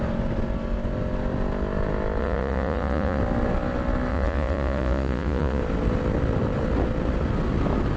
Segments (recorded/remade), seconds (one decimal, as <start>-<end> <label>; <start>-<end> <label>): 0.0-2.2 recorded; 2.2-3.2 remade; 3.2-4.1 recorded; 4.1-5.6 remade; 5.6-8.0 recorded